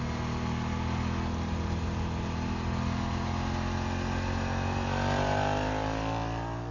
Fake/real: real